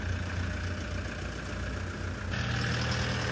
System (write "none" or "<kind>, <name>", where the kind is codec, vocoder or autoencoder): none